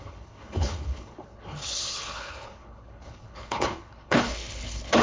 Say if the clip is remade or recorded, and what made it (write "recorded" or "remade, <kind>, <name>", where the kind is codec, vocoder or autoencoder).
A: remade, codec, HILCodec